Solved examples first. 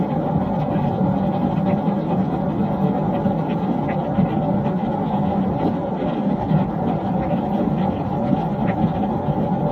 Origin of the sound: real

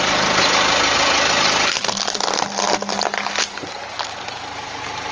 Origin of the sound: real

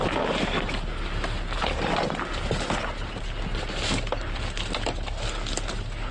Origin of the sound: real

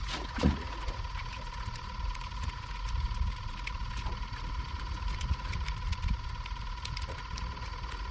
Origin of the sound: fake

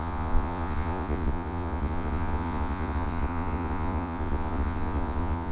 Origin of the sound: fake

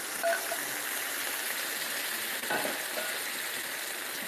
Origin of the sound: real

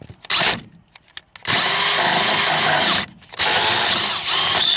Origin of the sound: real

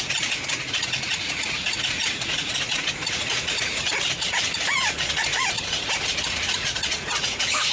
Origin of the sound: fake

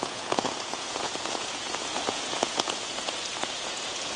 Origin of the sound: fake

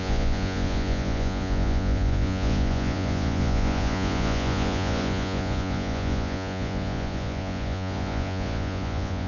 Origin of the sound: fake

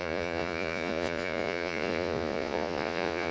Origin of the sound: fake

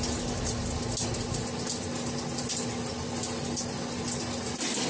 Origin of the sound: real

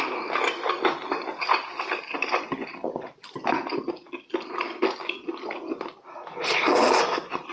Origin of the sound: real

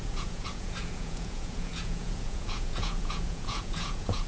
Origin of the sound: fake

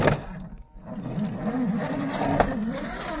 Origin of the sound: real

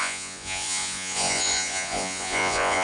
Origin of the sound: fake